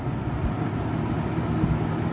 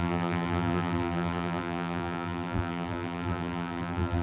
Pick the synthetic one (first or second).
second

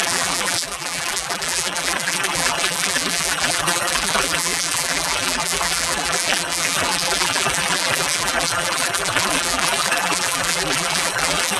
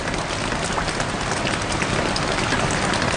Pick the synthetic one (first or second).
first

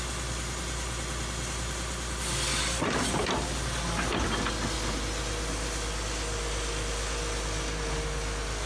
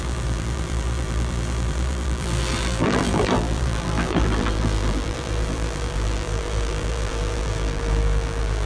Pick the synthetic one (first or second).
second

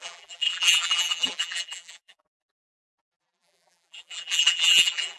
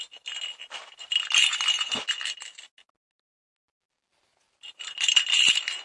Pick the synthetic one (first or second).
first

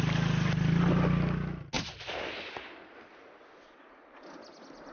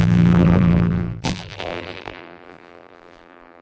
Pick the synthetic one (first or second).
second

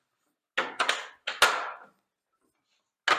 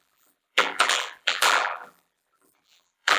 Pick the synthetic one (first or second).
second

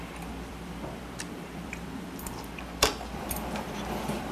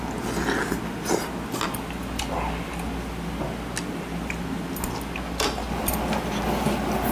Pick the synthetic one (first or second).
first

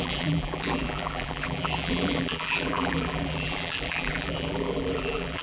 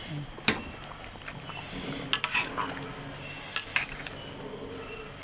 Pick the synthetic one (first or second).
first